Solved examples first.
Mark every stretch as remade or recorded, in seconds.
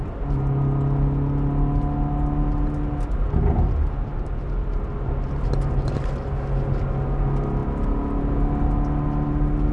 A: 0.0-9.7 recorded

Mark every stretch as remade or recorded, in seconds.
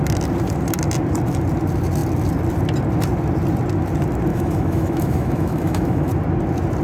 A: 0.0-4.3 recorded; 4.3-6.1 remade; 6.1-6.8 recorded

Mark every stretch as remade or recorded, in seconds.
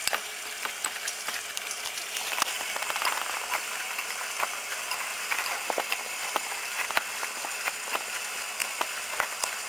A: 0.0-5.1 recorded; 5.1-6.9 remade; 6.9-8.6 recorded; 8.6-9.7 remade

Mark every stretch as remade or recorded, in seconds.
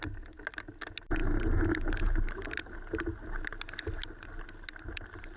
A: 0.0-5.4 recorded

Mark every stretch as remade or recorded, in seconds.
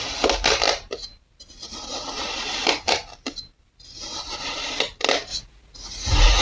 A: 0.0-5.3 recorded; 5.3-6.4 remade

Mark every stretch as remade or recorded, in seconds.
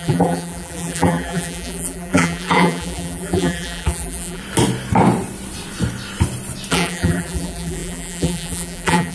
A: 0.0-4.4 remade; 4.4-6.7 recorded; 6.7-9.1 remade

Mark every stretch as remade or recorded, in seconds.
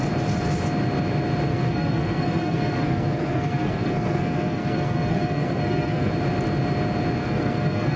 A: 0.0-1.5 recorded; 1.5-6.1 remade; 6.1-7.2 recorded; 7.2-8.0 remade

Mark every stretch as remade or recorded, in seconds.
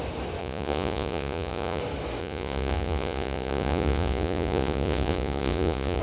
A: 0.0-0.4 recorded; 0.4-1.8 remade; 1.8-2.2 recorded; 2.2-6.0 remade